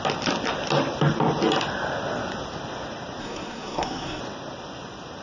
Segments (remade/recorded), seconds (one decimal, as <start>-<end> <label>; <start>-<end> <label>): 0.0-3.2 recorded; 3.2-4.2 remade; 4.2-5.2 recorded